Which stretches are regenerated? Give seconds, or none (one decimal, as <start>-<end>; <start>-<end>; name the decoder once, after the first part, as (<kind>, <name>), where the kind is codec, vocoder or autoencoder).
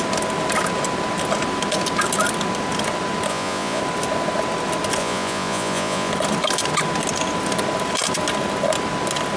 3.3-3.8 (vocoder, Vocos); 5.0-6.1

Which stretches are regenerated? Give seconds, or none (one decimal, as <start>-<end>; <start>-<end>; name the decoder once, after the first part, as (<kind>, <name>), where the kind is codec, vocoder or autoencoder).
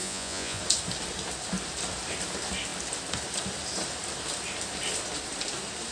0.0-0.6 (vocoder, Vocos)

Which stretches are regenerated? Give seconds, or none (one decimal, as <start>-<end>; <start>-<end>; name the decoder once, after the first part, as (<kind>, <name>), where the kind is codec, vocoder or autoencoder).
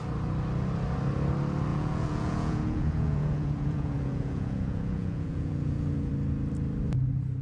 1.7-6.1 (vocoder, Vocos)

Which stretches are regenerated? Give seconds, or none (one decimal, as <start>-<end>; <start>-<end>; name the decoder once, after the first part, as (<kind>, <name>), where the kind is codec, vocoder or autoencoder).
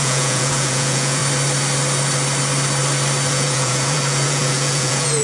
0.0-1.2 (vocoder, Vocos); 3.3-5.2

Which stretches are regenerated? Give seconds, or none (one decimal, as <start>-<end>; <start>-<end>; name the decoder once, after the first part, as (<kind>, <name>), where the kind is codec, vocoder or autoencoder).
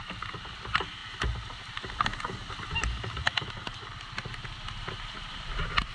none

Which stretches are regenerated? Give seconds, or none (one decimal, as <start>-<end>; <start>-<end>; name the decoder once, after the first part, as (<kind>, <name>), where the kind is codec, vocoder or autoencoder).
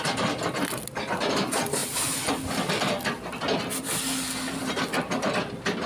none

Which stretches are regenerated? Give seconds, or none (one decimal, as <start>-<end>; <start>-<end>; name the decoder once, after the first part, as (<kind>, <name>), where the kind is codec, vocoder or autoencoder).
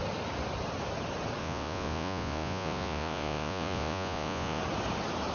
1.4-4.6 (vocoder, Vocos)